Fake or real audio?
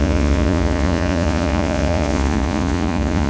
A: fake